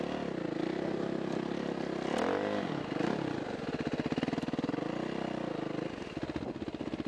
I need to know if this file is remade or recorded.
recorded